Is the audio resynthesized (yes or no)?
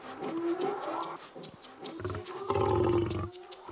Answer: no